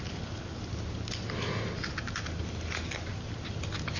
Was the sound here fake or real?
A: real